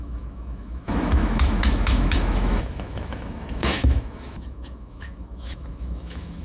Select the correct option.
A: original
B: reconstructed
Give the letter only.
B